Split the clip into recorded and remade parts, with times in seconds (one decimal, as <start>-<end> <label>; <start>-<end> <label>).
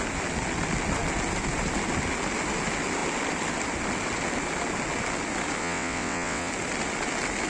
0.0-5.6 recorded; 5.6-6.5 remade; 6.5-7.5 recorded